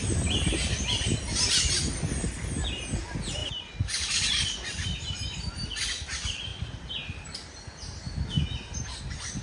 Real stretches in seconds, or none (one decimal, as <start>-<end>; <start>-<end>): 0.0-9.4